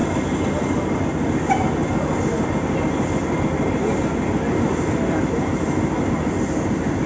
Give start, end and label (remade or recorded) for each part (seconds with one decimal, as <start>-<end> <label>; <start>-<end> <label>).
0.0-7.1 recorded